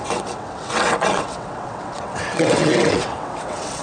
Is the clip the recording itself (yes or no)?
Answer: no